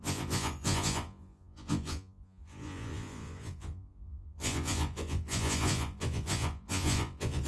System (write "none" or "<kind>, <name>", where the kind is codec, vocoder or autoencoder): vocoder, Vocos